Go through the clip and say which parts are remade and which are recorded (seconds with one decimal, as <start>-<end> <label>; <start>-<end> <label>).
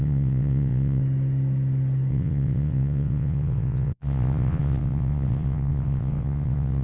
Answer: 0.0-1.0 remade; 1.0-2.1 recorded; 2.1-6.8 remade